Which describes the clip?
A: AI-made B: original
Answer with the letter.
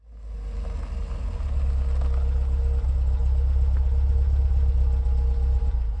B